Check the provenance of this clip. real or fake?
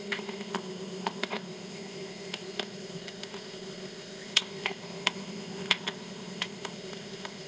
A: fake